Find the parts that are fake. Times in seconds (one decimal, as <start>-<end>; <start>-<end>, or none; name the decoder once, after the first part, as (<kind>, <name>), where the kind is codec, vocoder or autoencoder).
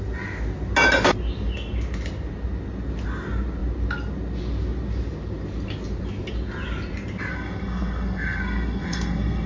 7.3-9.5 (codec, SNAC)